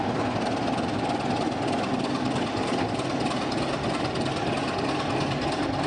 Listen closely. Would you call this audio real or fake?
real